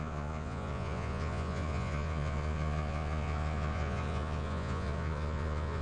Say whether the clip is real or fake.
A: fake